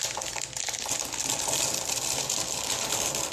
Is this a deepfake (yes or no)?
no